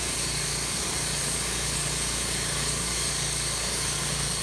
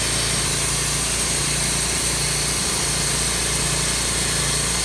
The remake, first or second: first